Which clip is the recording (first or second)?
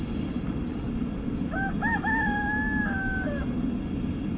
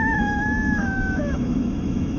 first